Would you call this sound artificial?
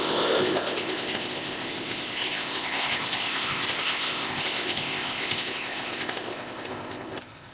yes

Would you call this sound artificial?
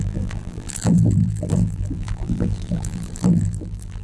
yes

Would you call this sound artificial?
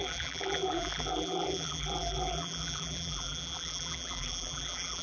yes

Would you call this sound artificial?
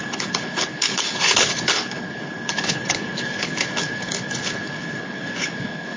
yes